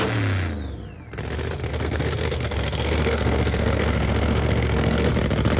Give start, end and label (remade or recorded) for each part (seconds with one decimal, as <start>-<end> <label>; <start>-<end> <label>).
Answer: 0.0-1.7 recorded; 1.7-5.1 remade; 5.1-5.6 recorded